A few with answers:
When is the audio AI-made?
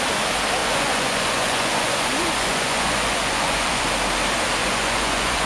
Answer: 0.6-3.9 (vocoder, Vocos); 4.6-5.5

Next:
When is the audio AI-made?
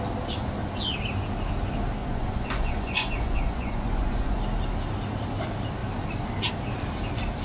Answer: 2.0-4.4 (vocoder, Vocos)